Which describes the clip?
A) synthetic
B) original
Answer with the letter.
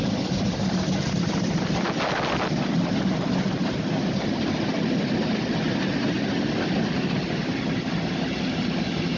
B